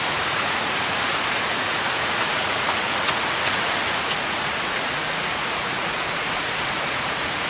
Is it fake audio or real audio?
fake